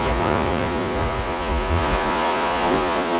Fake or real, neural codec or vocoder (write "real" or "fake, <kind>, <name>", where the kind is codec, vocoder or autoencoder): fake, vocoder, Vocos